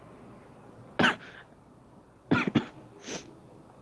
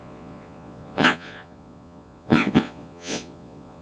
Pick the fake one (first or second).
second